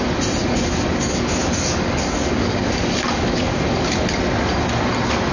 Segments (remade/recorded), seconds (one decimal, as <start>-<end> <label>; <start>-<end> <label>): 0.0-0.4 recorded; 0.4-3.6 remade; 3.6-5.3 recorded